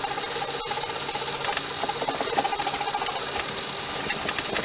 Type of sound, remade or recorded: recorded